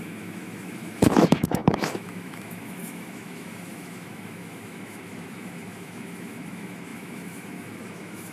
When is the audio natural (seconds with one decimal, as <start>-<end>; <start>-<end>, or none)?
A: none